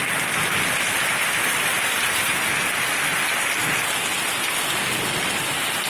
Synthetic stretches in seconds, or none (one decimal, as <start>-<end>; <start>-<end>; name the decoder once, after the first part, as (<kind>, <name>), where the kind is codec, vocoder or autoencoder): none